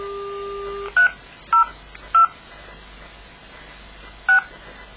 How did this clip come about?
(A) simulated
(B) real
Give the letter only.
B